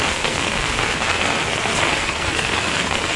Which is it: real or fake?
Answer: fake